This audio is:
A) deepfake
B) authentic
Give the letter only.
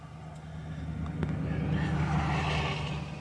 B